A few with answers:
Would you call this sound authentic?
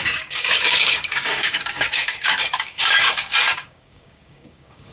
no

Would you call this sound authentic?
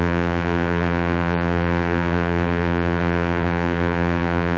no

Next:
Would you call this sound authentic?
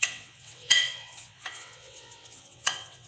no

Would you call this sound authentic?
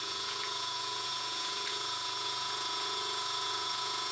no